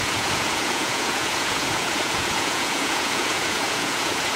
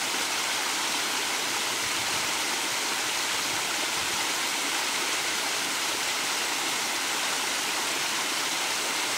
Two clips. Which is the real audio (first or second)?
second